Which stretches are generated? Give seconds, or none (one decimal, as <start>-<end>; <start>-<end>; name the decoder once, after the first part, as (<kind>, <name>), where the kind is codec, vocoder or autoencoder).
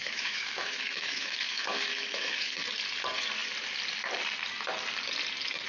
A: 0.0-2.6 (autoencoder, DAC-VAE)